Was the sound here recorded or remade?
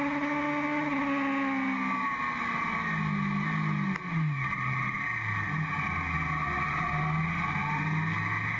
recorded